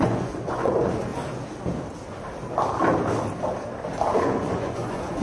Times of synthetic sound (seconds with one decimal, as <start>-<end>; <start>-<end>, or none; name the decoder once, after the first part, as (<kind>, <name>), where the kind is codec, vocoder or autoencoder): 0.0-1.1 (vocoder, Vocos); 4.2-5.2